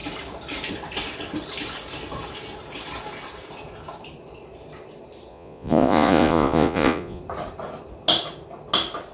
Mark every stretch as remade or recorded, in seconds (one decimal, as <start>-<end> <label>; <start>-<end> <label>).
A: 0.0-5.3 recorded; 5.3-7.2 remade; 7.2-9.1 recorded